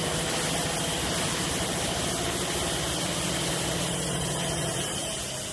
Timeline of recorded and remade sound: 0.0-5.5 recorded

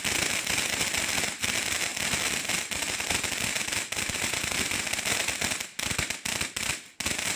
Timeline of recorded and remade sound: 0.0-1.9 recorded; 1.9-4.3 remade; 4.3-7.4 recorded